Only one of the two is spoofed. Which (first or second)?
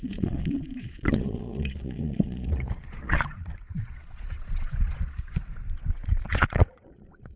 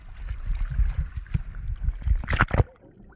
first